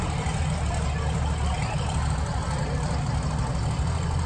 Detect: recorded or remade recorded